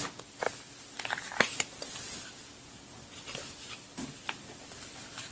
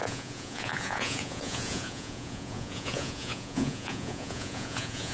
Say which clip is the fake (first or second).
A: second